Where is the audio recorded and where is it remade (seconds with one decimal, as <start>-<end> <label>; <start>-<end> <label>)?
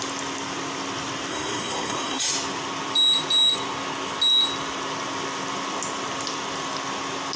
0.0-1.3 recorded; 1.3-2.2 remade; 2.2-7.4 recorded